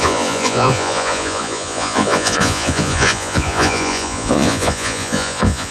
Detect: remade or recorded remade